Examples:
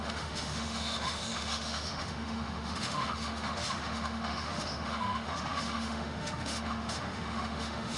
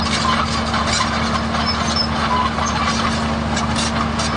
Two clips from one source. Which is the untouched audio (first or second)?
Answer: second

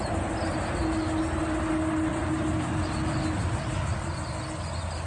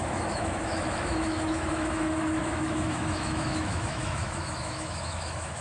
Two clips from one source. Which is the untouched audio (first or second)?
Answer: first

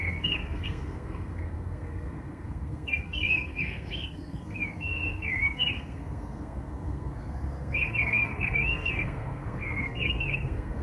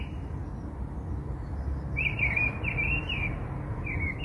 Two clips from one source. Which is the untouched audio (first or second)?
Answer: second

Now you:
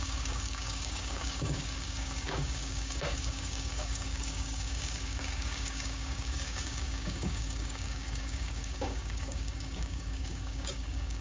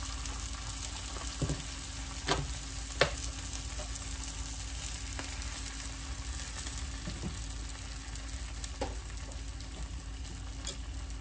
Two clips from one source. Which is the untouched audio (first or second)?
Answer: second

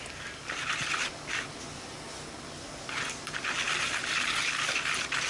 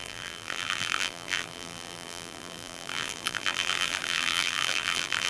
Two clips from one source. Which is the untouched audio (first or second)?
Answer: first